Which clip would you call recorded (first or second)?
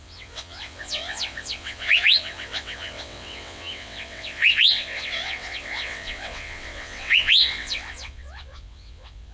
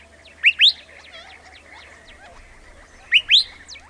second